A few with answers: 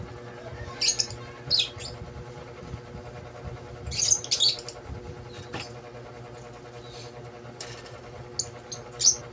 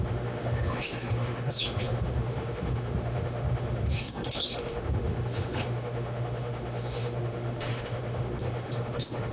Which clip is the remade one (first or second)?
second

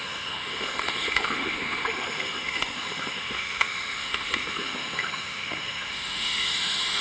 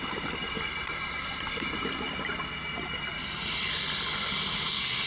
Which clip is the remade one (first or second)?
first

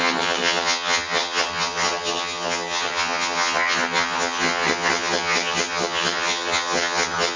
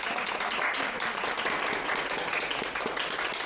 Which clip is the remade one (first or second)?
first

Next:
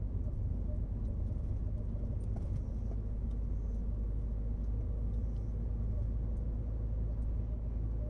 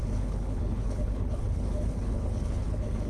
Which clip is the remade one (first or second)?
second